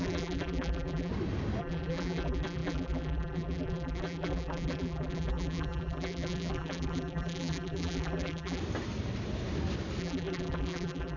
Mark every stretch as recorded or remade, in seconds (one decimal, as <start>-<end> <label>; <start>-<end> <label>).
0.0-1.1 remade; 1.1-1.6 recorded; 1.6-8.6 remade; 8.6-10.0 recorded; 10.0-11.2 remade